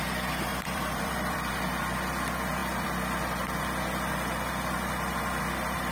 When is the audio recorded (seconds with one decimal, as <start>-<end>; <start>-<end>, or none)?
0.0-0.5; 1.5-5.9

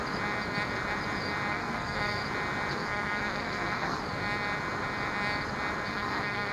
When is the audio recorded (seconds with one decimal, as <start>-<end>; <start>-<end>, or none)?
0.0-1.5; 2.2-2.7; 4.0-5.9

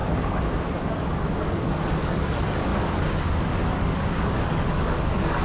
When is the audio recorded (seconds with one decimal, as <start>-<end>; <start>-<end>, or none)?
0.0-1.4; 2.7-3.3

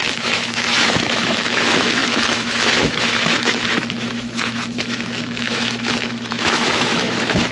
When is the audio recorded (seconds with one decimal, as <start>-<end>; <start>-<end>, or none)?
none

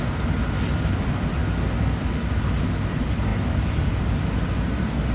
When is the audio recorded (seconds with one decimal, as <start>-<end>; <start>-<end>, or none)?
0.0-5.1

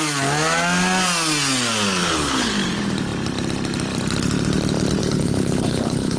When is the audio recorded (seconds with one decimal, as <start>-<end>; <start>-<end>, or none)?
0.0-2.0; 2.5-5.0

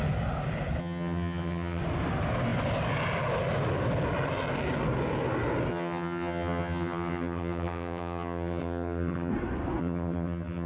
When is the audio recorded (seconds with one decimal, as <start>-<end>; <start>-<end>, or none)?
0.0-0.8; 1.8-5.7; 9.3-9.8